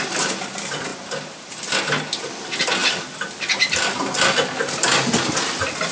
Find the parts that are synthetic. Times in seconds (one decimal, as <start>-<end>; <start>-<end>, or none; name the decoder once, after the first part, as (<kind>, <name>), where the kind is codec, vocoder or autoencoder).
none